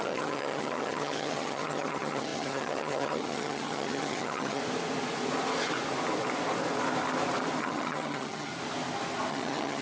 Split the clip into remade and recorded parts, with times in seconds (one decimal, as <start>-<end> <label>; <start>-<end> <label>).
0.0-4.6 remade; 4.6-7.6 recorded; 7.6-8.5 remade; 8.5-9.3 recorded; 9.3-9.8 remade